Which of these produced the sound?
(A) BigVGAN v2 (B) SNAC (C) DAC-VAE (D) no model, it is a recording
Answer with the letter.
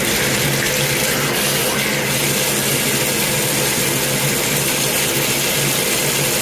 D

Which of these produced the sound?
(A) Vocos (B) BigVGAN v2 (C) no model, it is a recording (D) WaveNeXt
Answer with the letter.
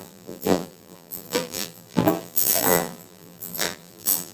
B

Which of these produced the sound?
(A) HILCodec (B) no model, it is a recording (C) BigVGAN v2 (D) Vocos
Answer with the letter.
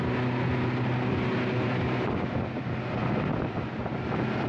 B